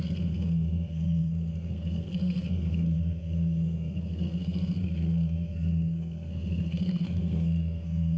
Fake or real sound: fake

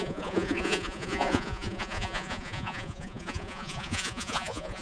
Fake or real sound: fake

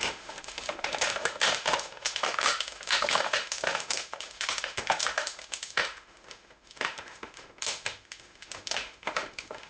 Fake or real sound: fake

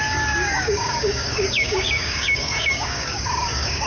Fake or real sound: fake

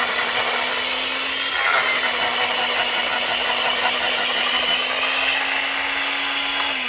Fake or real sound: real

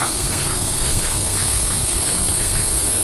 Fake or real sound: fake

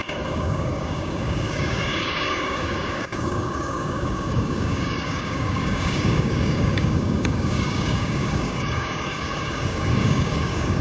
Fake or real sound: fake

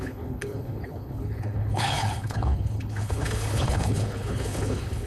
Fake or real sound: fake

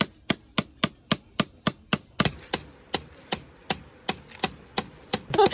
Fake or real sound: real